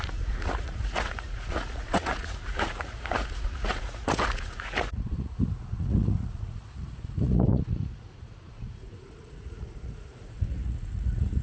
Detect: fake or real fake